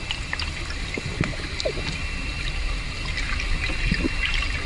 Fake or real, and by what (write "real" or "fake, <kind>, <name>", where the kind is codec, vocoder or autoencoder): real